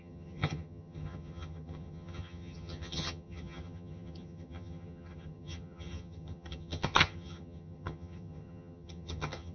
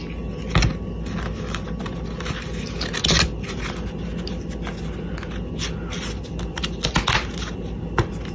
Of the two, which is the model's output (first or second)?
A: first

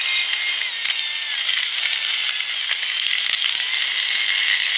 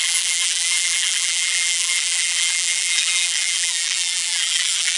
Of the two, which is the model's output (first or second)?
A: second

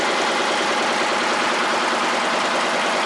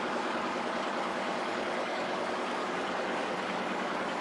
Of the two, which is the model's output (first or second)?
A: second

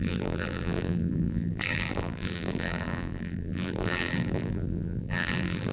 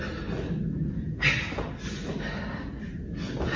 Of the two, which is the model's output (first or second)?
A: first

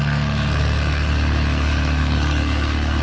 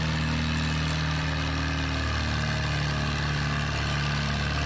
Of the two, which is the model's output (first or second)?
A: first